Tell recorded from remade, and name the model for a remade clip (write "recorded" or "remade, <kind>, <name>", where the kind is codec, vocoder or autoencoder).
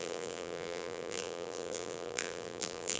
remade, vocoder, BigVGAN v2